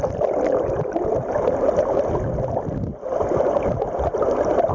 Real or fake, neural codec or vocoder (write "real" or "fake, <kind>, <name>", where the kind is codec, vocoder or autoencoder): real